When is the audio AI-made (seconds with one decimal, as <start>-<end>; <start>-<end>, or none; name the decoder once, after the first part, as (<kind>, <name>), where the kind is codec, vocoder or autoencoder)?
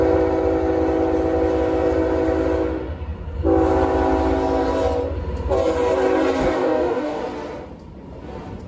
6.4-7.2 (codec, DAC)